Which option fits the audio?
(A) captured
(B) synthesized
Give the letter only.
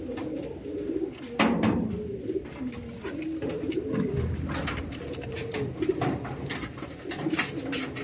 A